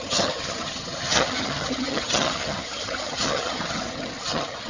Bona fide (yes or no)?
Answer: no